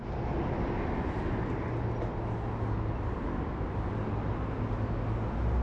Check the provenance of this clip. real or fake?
real